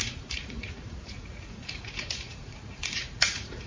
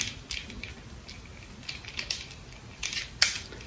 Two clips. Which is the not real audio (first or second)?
first